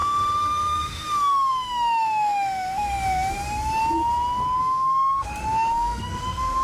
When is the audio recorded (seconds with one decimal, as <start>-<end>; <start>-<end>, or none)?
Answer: 3.8-4.6